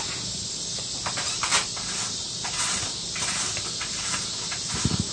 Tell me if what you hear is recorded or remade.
recorded